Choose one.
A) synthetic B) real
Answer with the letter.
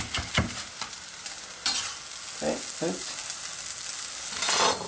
B